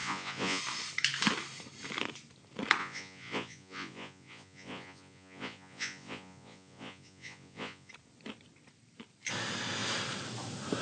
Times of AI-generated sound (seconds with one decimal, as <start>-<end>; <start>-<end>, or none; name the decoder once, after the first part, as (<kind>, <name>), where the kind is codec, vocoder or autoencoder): 0.0-0.6 (vocoder, Vocos); 2.8-7.9